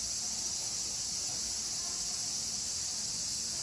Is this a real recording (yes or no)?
yes